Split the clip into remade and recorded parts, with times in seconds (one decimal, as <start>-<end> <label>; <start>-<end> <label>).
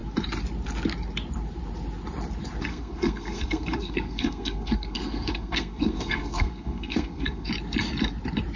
0.0-2.7 recorded; 2.7-7.5 remade; 7.5-8.6 recorded